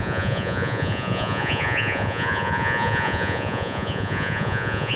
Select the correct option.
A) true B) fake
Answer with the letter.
B